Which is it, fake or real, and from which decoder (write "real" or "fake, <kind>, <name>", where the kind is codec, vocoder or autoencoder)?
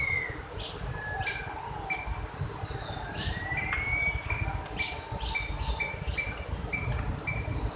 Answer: real